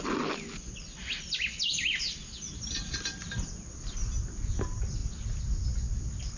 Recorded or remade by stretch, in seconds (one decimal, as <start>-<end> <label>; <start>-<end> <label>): 0.0-6.4 recorded